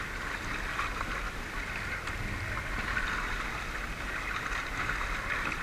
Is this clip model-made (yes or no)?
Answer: no